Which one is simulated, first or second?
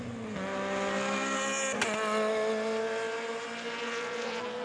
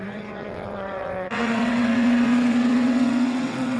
second